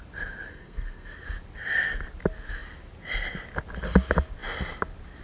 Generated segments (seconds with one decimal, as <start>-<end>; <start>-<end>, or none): 0.5-1.2